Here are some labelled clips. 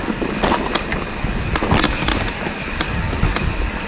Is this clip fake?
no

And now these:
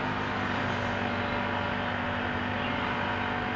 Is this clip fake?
no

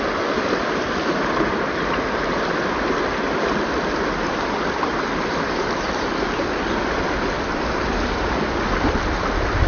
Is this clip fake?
no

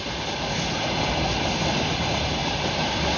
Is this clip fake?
no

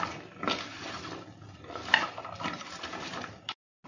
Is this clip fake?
no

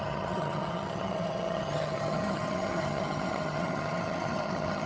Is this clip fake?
yes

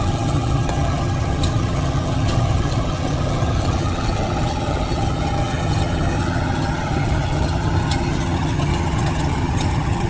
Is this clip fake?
yes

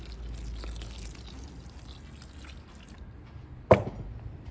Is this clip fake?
no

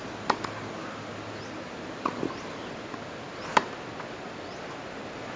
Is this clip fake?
no